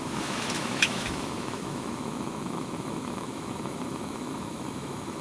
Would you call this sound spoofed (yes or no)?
yes